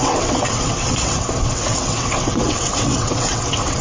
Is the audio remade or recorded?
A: remade